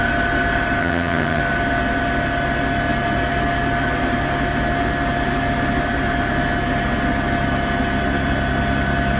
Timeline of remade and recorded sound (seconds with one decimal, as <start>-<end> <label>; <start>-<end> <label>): 0.0-0.8 recorded; 0.8-1.4 remade; 1.4-9.2 recorded